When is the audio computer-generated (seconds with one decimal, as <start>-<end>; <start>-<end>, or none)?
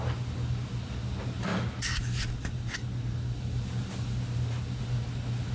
none